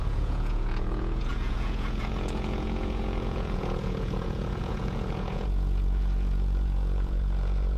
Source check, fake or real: fake